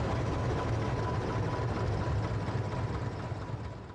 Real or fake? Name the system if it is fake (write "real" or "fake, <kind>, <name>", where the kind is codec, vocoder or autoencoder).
real